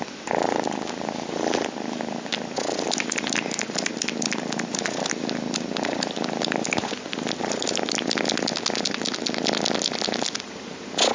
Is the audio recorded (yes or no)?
yes